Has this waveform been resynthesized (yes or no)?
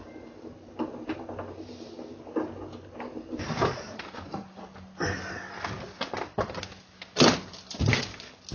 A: no